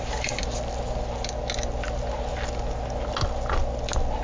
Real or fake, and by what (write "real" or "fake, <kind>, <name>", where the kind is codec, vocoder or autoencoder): real